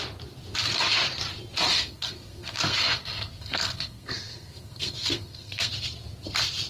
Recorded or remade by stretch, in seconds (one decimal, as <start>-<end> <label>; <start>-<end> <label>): 0.0-1.7 recorded; 1.7-5.7 remade; 5.7-6.7 recorded